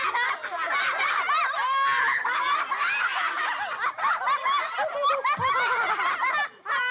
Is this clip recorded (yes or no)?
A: yes